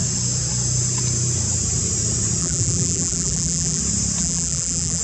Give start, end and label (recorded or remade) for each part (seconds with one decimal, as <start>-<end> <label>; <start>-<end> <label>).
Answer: 0.0-2.4 recorded; 2.4-3.8 remade; 3.8-4.2 recorded; 4.2-5.0 remade